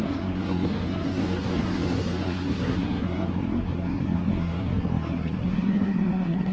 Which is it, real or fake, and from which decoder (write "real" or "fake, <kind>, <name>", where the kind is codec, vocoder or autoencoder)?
fake, codec, SNAC